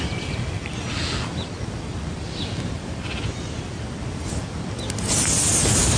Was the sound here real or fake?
real